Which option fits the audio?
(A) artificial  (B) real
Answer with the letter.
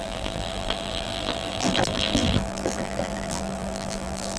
A